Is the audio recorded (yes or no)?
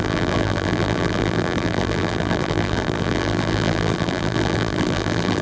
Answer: no